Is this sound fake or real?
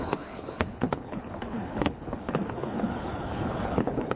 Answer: fake